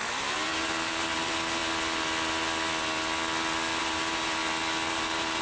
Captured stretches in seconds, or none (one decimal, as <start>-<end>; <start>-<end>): 1.6-3.8; 4.4-4.9